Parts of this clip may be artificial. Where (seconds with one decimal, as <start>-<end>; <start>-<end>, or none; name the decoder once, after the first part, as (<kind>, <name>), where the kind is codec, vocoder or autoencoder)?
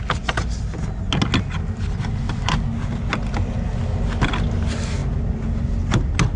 none